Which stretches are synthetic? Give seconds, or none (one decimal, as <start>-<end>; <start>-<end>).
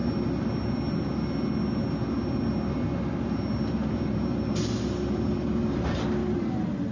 none